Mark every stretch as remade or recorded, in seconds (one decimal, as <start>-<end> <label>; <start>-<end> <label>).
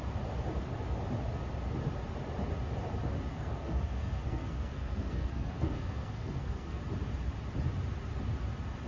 0.0-3.3 recorded; 3.3-6.8 remade; 6.8-8.9 recorded